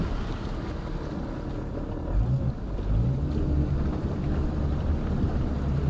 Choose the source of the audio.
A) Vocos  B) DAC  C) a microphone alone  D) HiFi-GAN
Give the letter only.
C